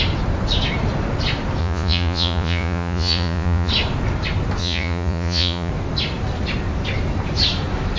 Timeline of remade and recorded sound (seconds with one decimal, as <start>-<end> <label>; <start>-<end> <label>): 0.0-1.6 recorded; 1.6-3.7 remade; 3.7-4.6 recorded; 4.6-5.7 remade; 5.7-8.0 recorded

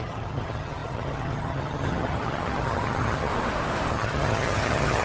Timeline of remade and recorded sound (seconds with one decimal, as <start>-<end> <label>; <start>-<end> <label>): 0.0-3.3 remade; 3.3-3.9 recorded; 3.9-5.0 remade

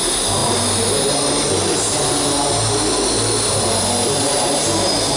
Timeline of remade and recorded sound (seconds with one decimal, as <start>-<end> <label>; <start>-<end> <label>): 0.0-5.2 recorded

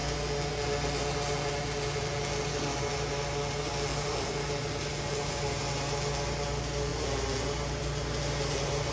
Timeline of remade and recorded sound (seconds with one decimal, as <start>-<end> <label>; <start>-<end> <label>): 0.0-8.9 recorded

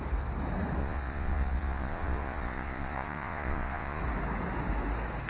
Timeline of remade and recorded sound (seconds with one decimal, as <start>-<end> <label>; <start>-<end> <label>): 0.0-0.8 recorded; 0.8-4.0 remade; 4.0-5.3 recorded

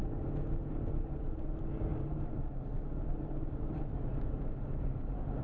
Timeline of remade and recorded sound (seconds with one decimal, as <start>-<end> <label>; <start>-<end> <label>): 0.0-1.5 remade; 1.5-1.9 recorded; 1.9-5.4 remade

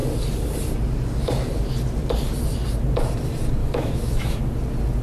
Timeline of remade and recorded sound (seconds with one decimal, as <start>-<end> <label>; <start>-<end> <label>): 0.0-3.6 recorded; 3.6-4.4 remade; 4.4-5.0 recorded

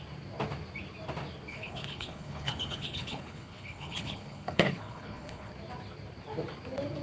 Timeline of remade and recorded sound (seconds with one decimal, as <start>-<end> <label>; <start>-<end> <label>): 0.0-1.5 recorded; 1.5-5.5 remade; 5.5-7.0 recorded